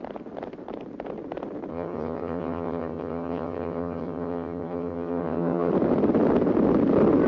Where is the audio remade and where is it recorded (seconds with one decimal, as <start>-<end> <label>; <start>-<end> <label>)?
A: 0.0-1.7 recorded; 1.7-5.7 remade; 5.7-7.3 recorded